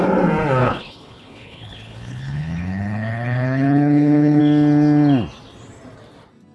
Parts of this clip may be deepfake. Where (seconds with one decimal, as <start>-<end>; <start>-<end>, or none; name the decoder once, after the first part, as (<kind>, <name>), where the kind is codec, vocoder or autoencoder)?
0.6-4.4 (codec, HILCodec)

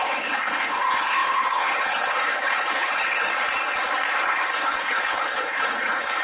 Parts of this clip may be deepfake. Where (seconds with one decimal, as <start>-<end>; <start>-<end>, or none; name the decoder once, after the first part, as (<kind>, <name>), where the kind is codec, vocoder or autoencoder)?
0.0-3.3 (codec, HILCodec); 4.3-6.2

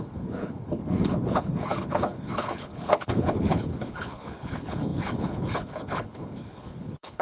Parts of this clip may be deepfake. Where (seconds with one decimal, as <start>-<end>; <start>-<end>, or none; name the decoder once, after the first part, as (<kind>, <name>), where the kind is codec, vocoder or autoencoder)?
0.0-7.2 (codec, HILCodec)

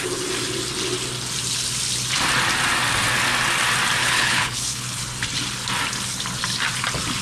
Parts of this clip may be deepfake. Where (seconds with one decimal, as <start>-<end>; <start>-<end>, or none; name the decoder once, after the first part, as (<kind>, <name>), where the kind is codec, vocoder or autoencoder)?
4.0-5.0 (codec, HILCodec)